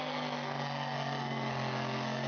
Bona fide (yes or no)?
no